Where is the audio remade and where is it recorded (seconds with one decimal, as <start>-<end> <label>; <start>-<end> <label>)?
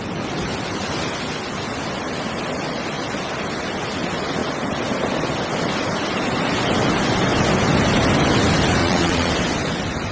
0.0-8.8 recorded; 8.8-9.3 remade; 9.3-10.1 recorded